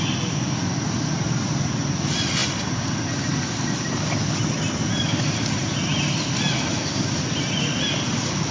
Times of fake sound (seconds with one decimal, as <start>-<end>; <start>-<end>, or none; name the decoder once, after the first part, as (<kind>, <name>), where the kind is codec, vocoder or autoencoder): none